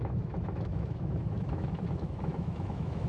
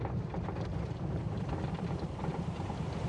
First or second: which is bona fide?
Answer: second